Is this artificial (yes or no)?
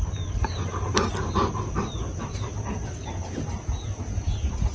no